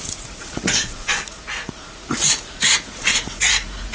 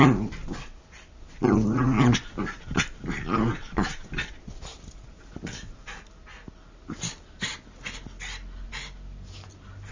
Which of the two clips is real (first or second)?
second